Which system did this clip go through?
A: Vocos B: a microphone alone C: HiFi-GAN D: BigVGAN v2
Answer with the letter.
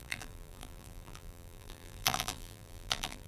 D